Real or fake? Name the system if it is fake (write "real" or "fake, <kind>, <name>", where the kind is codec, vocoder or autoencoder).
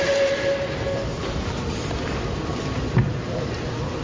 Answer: real